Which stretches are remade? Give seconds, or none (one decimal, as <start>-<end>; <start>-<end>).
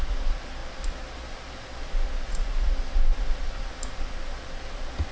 none